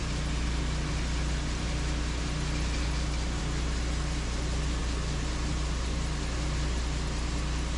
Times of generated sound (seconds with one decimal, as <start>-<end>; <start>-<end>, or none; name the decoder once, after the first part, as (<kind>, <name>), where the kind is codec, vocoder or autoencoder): none